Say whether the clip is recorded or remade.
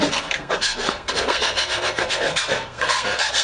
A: remade